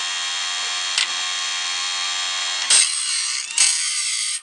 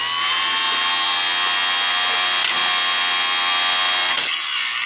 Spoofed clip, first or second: first